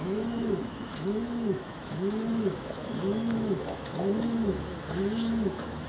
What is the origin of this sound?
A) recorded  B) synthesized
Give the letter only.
B